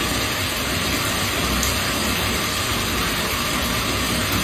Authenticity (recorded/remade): recorded